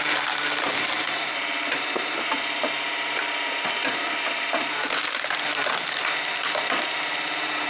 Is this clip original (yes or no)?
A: no